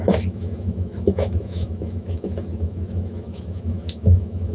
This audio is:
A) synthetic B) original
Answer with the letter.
A